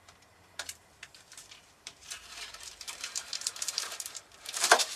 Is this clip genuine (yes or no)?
no